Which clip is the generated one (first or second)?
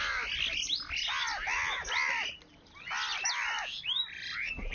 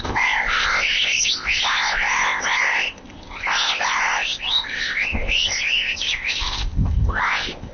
second